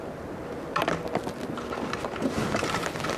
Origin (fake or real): real